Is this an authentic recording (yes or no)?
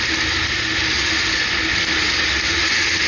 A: yes